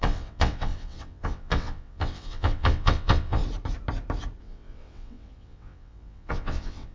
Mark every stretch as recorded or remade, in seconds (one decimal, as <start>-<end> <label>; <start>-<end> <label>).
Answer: 0.0-3.4 remade; 3.4-4.4 recorded; 4.4-6.9 remade